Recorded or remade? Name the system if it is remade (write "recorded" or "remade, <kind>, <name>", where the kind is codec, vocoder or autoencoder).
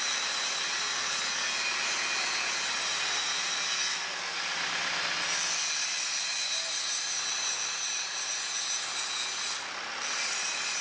recorded